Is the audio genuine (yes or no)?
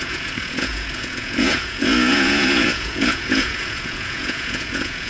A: no